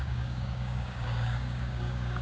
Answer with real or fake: fake